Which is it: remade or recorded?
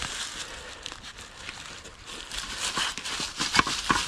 recorded